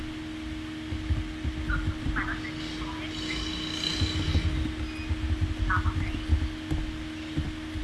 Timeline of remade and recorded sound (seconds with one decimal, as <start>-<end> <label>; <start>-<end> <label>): 0.0-7.8 recorded